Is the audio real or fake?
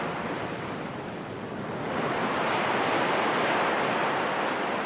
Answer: real